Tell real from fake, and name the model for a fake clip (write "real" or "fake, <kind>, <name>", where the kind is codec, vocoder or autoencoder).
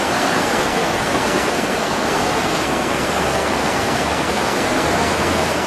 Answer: fake, codec, SNAC